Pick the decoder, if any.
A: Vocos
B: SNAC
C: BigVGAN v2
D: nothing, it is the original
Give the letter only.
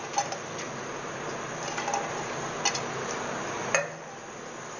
D